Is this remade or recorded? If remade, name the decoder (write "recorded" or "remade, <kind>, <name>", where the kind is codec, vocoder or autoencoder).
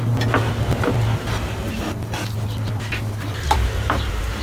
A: recorded